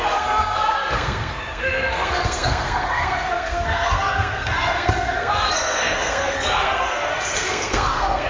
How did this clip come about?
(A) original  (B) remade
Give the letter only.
B